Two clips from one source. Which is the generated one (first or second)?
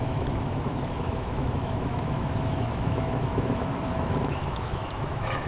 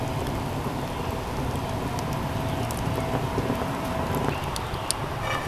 first